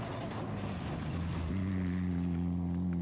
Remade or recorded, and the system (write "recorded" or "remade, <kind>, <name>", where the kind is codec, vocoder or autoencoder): recorded